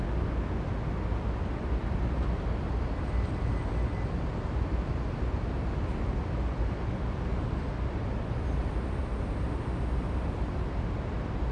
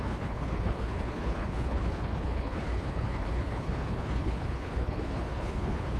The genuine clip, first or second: first